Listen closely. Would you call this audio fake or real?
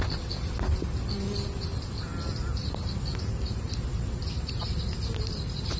real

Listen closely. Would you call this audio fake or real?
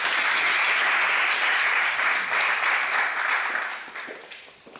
real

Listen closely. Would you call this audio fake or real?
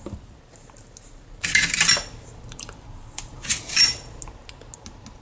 real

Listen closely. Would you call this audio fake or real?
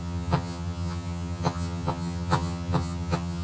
fake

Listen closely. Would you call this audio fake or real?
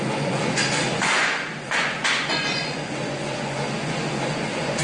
fake